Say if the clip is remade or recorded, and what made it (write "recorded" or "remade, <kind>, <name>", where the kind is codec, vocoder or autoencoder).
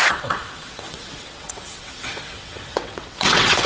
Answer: remade, vocoder, WaveNeXt